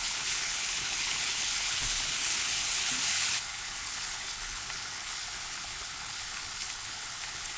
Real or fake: fake